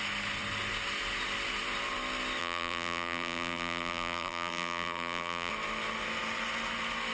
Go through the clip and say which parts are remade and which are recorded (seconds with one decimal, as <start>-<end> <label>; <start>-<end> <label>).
0.0-2.4 recorded; 2.4-5.5 remade; 5.5-7.1 recorded